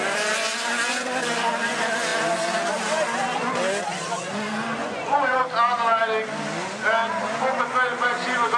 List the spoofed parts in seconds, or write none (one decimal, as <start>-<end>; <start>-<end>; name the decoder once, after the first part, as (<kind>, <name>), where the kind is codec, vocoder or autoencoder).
4.8-5.4 (vocoder, Vocos)